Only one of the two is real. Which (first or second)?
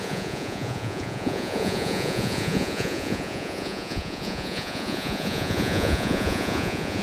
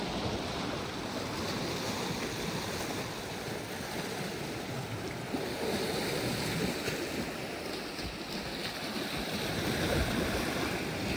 second